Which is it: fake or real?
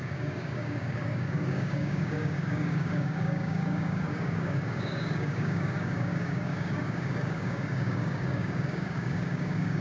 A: fake